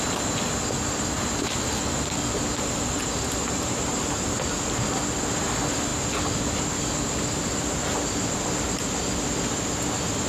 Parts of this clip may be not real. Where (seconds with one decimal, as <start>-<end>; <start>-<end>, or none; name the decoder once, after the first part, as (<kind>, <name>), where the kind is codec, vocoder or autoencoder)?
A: none

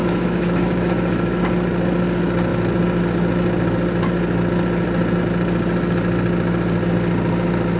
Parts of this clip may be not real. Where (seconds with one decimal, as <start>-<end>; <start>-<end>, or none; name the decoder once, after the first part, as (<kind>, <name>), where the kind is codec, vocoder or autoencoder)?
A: 0.0-1.4 (autoencoder, DAC-VAE)

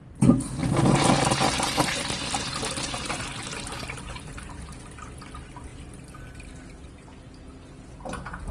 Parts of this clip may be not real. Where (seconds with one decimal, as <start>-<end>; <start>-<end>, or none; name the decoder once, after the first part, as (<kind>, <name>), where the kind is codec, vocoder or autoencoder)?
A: none

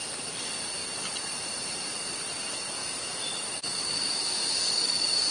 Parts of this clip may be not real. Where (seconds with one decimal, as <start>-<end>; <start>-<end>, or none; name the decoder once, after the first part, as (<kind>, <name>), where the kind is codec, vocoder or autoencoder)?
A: 2.8-5.3 (autoencoder, DAC-VAE)